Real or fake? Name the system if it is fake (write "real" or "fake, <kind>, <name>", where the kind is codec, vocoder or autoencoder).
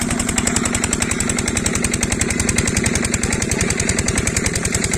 real